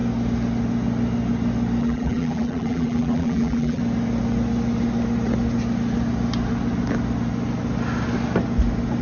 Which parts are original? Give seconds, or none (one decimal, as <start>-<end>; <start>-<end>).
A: 0.0-1.8; 3.8-9.0